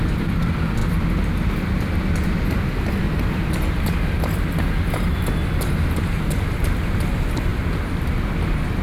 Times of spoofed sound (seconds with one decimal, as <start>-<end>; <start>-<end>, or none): none